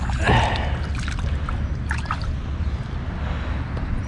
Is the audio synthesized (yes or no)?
no